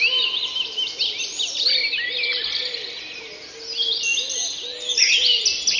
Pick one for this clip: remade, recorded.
recorded